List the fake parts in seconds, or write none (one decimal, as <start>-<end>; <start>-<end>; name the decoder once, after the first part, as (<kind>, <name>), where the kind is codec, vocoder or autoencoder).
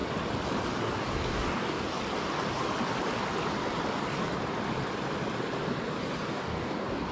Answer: 0.7-2.0 (codec, DAC); 6.3-7.1